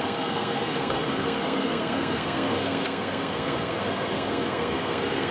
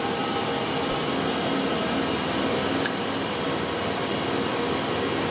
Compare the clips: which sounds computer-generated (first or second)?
first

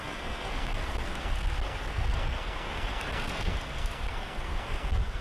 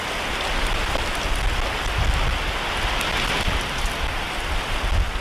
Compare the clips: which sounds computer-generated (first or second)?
first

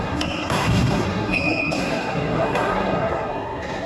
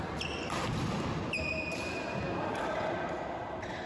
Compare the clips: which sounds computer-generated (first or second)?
first